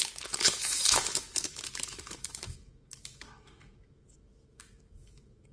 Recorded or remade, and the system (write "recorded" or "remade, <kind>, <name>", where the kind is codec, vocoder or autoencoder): remade, autoencoder, DAC-VAE